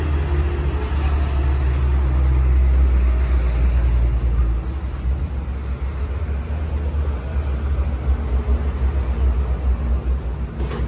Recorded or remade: recorded